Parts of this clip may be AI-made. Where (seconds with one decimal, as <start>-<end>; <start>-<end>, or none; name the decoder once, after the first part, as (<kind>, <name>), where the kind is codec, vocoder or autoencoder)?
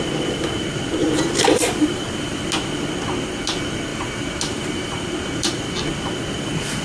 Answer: 1.0-2.5 (vocoder, BigVGAN v2); 3.9-5.6